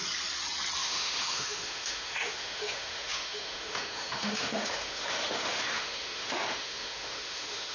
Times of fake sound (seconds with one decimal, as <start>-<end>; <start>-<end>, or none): 0.8-7.7